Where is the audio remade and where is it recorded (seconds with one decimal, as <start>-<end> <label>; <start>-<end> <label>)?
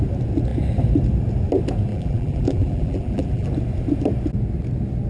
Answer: 0.0-1.9 recorded; 1.9-3.5 remade; 3.5-5.1 recorded